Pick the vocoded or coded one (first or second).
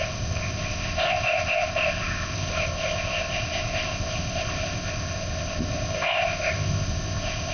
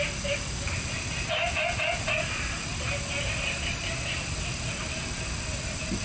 first